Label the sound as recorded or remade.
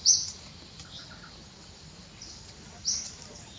recorded